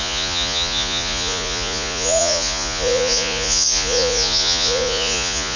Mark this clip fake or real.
fake